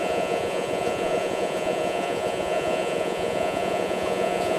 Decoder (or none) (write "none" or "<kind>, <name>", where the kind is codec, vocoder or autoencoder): vocoder, Vocos